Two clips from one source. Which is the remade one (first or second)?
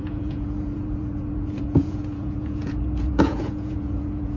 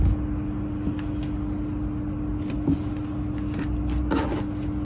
first